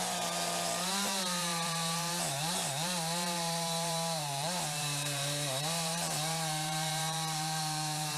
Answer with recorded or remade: remade